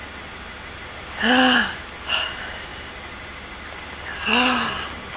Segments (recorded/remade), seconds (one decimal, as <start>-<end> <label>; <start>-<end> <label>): 0.0-5.2 recorded